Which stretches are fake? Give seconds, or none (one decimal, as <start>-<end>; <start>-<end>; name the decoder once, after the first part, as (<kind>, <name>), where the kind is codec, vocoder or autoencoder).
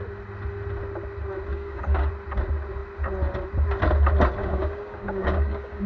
1.5-2.1 (codec, DAC); 4.4-5.9